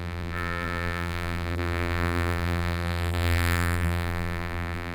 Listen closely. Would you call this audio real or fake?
fake